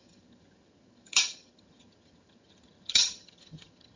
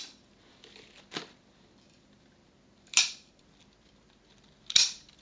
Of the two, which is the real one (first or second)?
second